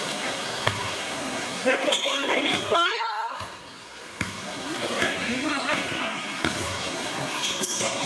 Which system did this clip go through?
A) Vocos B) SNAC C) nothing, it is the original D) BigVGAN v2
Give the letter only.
B